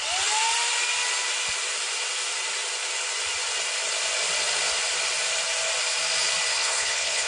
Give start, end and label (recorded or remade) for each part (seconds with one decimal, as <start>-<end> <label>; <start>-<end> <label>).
0.0-6.5 recorded; 6.5-7.3 remade